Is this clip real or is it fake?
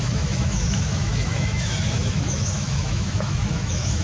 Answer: fake